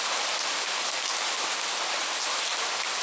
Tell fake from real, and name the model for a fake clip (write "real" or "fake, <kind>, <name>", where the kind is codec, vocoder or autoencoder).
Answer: real